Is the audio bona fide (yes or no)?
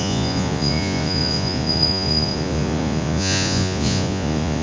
no